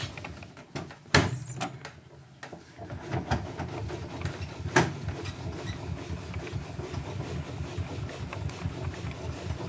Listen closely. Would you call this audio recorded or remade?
recorded